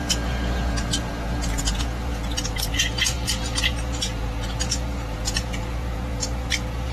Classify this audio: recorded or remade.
remade